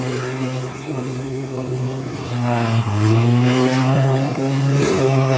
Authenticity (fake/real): fake